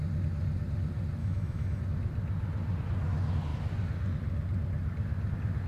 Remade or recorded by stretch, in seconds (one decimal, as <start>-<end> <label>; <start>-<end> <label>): 0.0-1.2 recorded; 1.2-1.8 remade; 1.8-5.7 recorded